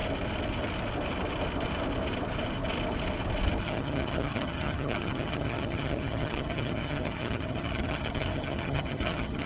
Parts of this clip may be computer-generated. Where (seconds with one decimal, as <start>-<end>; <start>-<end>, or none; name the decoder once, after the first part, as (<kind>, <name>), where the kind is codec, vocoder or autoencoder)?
3.6-9.5 (vocoder, HiFi-GAN)